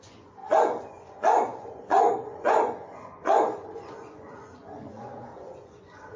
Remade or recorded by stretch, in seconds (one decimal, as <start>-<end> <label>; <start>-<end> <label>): 0.0-6.2 remade